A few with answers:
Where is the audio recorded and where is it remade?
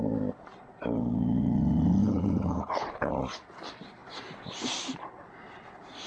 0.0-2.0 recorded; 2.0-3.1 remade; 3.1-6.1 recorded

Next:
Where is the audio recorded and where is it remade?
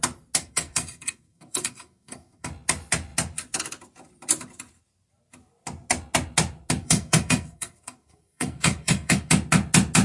0.0-0.4 recorded; 0.4-2.5 remade; 2.5-6.8 recorded; 6.8-9.3 remade; 9.3-10.0 recorded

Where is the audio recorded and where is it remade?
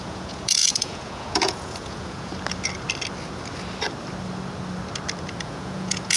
0.0-2.3 remade; 2.3-5.4 recorded; 5.4-6.2 remade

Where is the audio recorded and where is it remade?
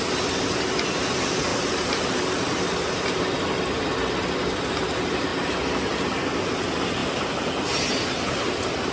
0.0-1.5 recorded; 1.5-3.6 remade; 3.6-8.9 recorded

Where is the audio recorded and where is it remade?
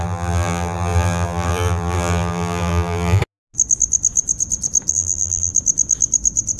0.0-3.2 remade; 3.2-4.9 recorded; 4.9-5.5 remade; 5.5-6.6 recorded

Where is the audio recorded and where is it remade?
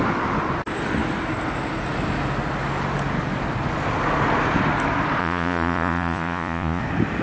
0.0-5.2 recorded; 5.2-6.8 remade; 6.8-7.2 recorded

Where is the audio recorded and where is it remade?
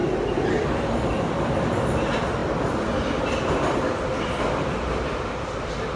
0.0-1.2 remade; 1.2-2.4 recorded; 2.4-5.4 remade; 5.4-6.0 recorded